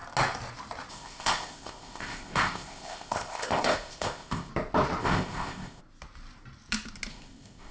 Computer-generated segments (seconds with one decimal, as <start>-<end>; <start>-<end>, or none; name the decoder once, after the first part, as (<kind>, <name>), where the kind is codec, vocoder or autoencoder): 0.9-4.5 (codec, ZipCodec); 5.0-5.8; 7.1-7.7